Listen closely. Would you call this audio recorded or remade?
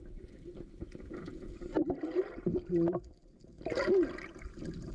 recorded